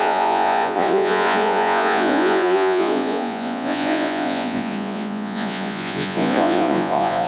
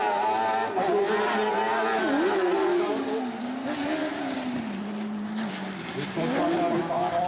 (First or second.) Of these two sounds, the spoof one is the first